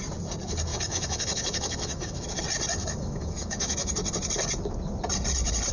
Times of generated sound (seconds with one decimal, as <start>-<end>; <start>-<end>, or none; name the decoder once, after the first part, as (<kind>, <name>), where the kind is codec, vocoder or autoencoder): 0.7-2.4 (autoencoder, DAC-VAE); 2.8-3.9